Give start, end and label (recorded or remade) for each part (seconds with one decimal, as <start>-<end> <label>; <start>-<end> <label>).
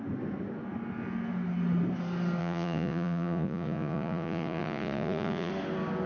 0.0-2.4 recorded; 2.4-5.5 remade; 5.5-6.1 recorded